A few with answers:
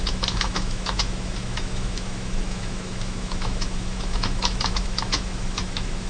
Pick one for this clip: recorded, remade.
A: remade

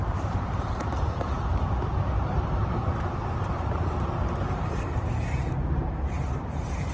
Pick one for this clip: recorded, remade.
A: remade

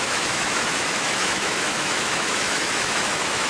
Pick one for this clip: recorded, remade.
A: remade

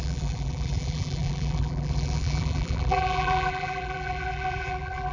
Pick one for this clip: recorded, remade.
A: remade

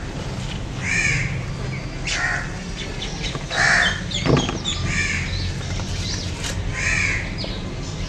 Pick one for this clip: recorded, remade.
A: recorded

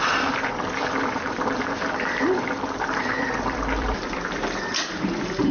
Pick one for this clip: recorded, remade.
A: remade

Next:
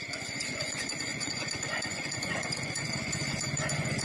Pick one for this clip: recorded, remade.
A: remade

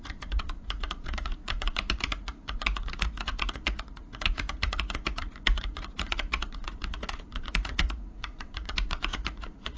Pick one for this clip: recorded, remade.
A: remade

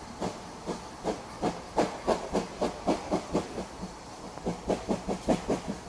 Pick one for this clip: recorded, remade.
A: recorded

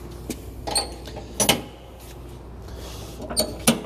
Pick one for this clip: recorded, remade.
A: recorded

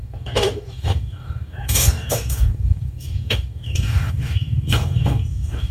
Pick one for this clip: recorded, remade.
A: remade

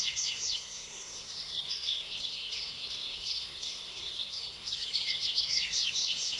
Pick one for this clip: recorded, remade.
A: remade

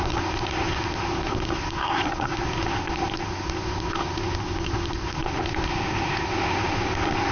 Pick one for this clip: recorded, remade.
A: remade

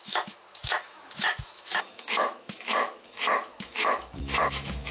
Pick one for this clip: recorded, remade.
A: remade